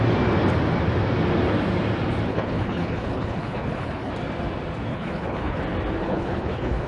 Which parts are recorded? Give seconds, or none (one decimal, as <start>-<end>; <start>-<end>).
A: 0.0-2.3; 4.1-4.9; 5.6-6.0